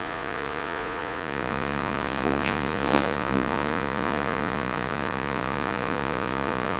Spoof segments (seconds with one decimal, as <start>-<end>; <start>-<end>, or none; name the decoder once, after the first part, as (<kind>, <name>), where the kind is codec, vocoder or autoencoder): 0.0-6.8 (vocoder, Vocos)